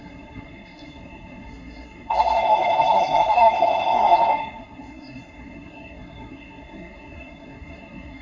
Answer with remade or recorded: remade